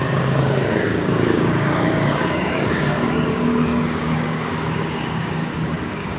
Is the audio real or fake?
fake